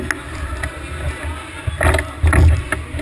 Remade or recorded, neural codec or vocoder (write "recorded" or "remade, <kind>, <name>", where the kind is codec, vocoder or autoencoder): recorded